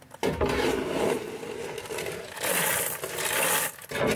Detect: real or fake real